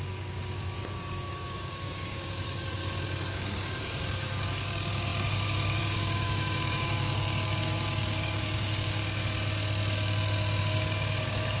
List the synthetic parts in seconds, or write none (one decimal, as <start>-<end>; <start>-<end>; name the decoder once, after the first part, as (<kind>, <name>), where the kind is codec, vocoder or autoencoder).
0.0-2.8 (codec, DAC); 3.3-9.0; 10.6-11.6